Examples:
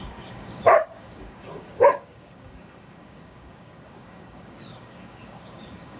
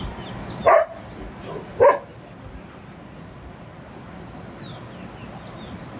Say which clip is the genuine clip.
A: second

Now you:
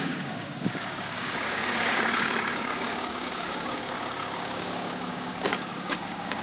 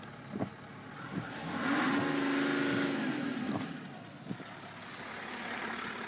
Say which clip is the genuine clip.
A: second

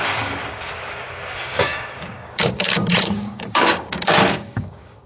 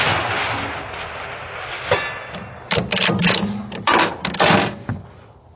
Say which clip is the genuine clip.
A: second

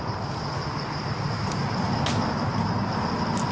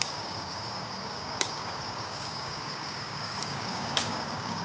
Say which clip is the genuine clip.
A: first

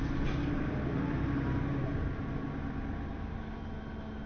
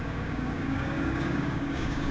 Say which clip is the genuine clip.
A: first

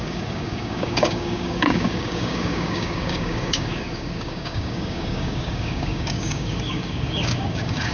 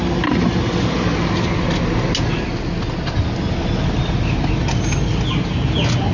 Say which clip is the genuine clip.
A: second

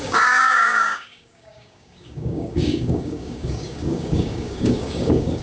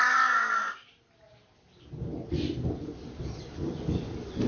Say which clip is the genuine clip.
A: second